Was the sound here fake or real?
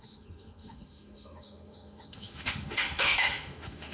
fake